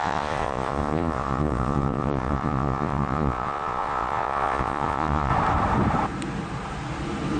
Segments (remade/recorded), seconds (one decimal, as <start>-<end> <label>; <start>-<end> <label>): 0.0-5.3 remade; 5.3-7.4 recorded